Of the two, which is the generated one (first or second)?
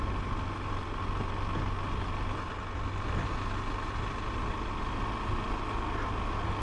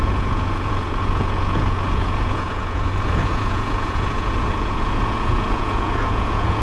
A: second